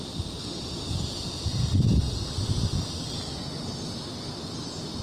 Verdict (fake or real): real